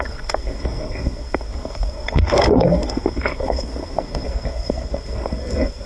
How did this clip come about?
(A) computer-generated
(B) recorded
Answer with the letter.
A